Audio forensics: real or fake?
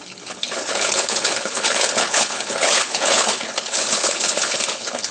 fake